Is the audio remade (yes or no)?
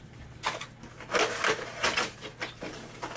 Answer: no